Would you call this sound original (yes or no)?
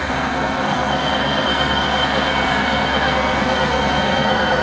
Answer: no